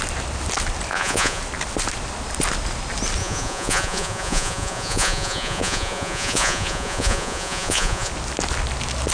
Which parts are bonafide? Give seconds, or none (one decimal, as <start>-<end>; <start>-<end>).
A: 0.0-0.9; 1.4-3.2; 8.1-9.1